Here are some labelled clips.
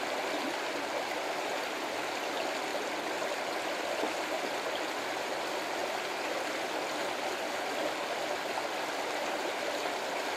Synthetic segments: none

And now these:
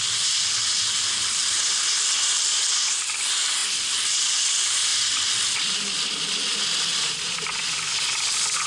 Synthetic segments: 3.6-4.4 (vocoder, BigVGAN v2); 4.9-7.1

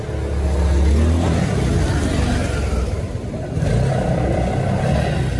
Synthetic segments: 1.7-4.9 (vocoder, BigVGAN v2)

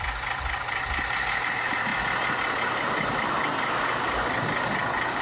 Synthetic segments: 0.0-1.9 (vocoder, BigVGAN v2)